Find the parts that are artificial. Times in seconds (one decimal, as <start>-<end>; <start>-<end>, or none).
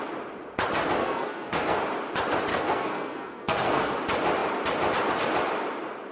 1.0-1.8; 2.5-4.0